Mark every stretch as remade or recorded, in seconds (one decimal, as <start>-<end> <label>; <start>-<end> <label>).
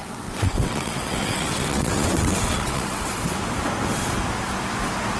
0.0-3.1 remade; 3.1-5.2 recorded